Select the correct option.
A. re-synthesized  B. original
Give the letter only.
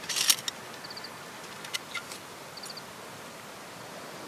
B